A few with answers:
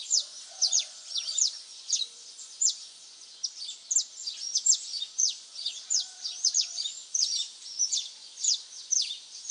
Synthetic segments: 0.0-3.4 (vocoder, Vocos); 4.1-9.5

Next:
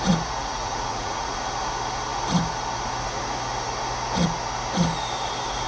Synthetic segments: 0.4-1.4 (vocoder, Vocos)

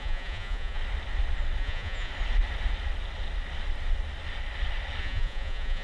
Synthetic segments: 0.0-0.8 (vocoder, Vocos); 1.6-2.1; 5.0-5.8

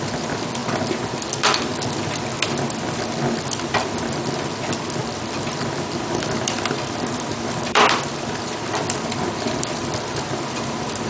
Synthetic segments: 0.0-0.6 (vocoder, BigVGAN v2); 1.1-1.7; 5.8-11.1

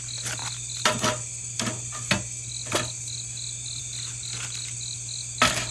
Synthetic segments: none

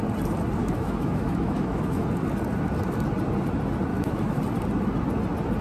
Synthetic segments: 0.6-2.0 (autoencoder, DAC-VAE); 3.9-4.4

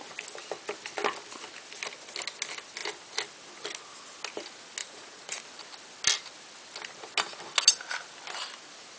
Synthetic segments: 4.8-5.4 (vocoder, Vocos)